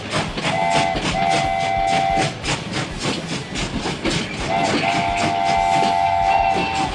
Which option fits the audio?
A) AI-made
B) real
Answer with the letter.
B